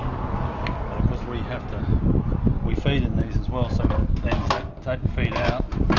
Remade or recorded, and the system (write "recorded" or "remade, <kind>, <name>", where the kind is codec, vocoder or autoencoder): recorded